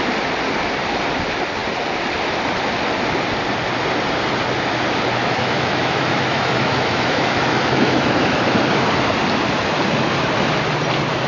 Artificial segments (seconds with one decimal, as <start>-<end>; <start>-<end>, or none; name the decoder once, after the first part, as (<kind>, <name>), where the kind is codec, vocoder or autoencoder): 5.2-8.6 (autoencoder, DAC-VAE)